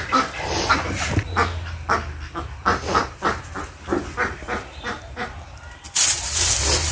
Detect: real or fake real